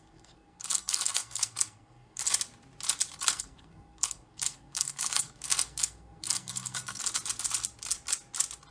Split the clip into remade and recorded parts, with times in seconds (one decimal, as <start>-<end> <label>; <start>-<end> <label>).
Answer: 0.0-2.2 remade; 2.2-3.2 recorded; 3.2-7.0 remade; 7.0-8.7 recorded